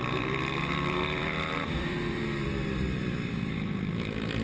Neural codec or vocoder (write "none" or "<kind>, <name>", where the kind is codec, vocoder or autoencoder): vocoder, BigVGAN v2